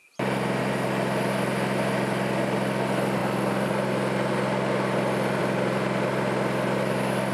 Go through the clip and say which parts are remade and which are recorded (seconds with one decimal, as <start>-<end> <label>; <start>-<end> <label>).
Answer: 0.0-7.3 recorded